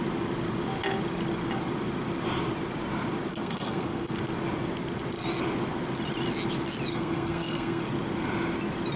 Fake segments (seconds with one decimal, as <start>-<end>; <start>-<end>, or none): 3.3-4.1; 6.9-7.8